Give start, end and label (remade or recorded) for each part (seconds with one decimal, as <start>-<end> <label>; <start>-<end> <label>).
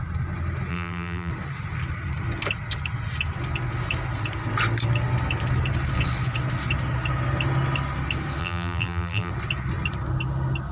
0.0-0.7 recorded; 0.7-1.3 remade; 1.3-8.4 recorded; 8.4-9.3 remade; 9.3-10.7 recorded